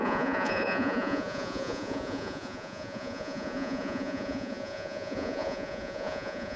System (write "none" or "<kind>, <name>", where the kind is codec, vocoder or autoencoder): vocoder, Vocos